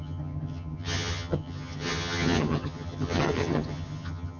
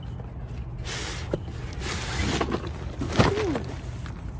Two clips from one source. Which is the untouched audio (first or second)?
second